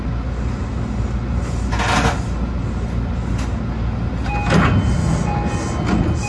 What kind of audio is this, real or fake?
real